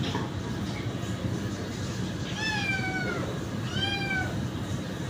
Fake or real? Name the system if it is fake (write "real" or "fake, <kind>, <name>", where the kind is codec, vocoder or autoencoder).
real